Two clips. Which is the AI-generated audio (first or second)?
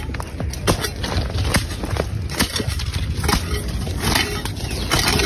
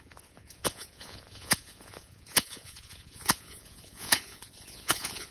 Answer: second